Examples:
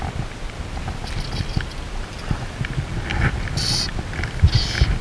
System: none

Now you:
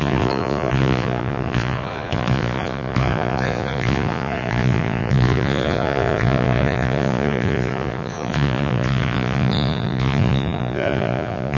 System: vocoder, Vocos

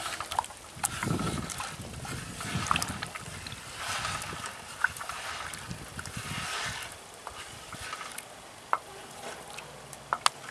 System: none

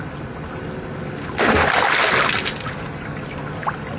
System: none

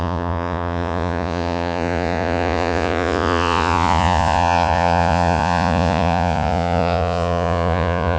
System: vocoder, Vocos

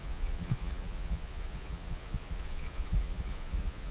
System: vocoder, Vocos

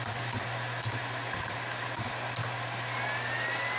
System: none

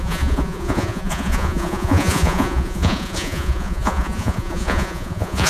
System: vocoder, Vocos